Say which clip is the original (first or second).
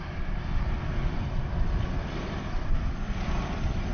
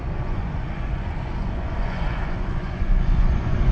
first